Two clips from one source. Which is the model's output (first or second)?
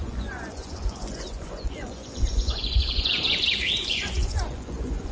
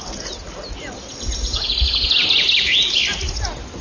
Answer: first